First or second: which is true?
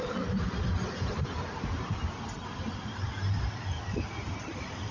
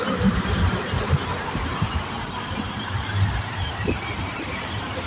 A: first